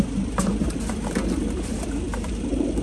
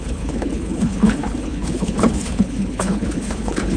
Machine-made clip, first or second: second